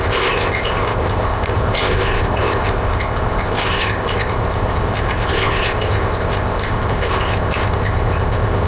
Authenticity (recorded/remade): remade